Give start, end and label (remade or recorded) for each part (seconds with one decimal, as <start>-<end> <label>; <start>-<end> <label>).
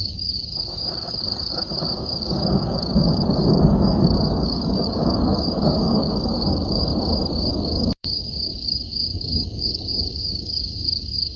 0.0-6.9 remade; 6.9-7.5 recorded; 7.5-11.4 remade